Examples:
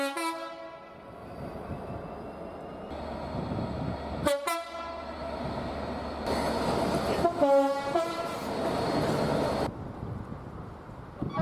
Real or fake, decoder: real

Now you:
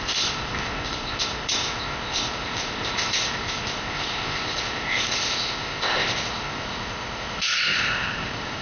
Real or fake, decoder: fake, codec, ZipCodec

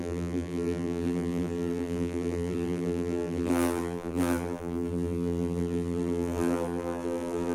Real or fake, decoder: fake, vocoder, BigVGAN v2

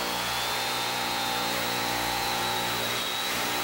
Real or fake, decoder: fake, vocoder, Vocos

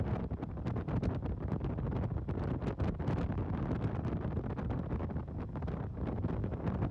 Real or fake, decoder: real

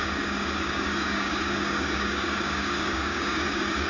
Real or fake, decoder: fake, codec, DAC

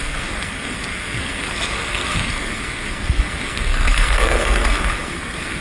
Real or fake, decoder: fake, codec, SNAC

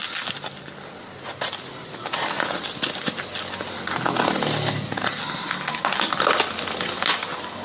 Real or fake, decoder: real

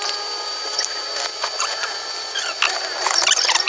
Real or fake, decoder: fake, vocoder, BigVGAN v2